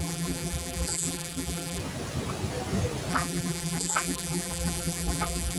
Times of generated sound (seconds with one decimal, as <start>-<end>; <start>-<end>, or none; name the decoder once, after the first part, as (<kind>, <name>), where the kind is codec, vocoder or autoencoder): 0.0-1.8 (vocoder, BigVGAN v2); 3.1-5.6